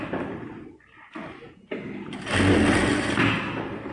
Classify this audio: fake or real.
real